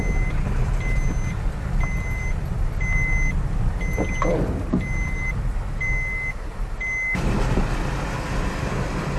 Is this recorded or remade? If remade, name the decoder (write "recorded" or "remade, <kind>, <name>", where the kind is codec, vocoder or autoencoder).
recorded